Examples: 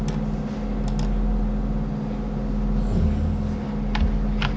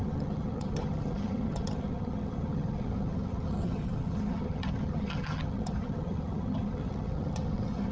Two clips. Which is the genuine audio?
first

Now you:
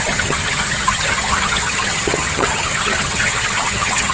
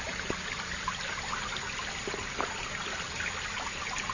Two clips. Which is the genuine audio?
second